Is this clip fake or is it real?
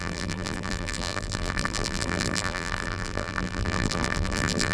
fake